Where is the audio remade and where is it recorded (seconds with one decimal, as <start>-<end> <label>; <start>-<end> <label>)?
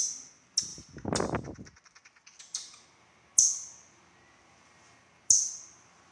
0.0-6.1 recorded